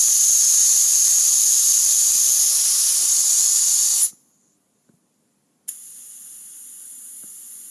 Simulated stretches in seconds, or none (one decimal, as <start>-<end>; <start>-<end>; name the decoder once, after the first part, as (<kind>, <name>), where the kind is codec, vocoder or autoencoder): none